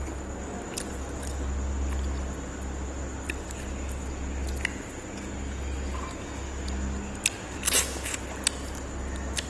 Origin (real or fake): real